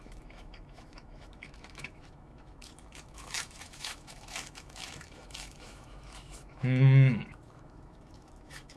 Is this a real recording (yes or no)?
no